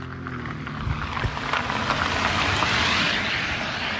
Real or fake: real